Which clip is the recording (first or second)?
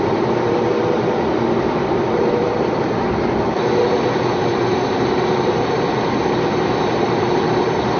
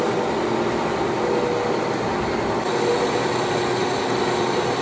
second